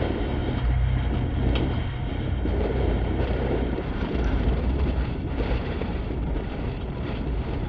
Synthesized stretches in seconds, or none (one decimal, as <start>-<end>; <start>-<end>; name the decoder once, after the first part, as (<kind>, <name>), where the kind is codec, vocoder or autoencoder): 0.0-0.4 (vocoder, BigVGAN v2); 1.6-7.7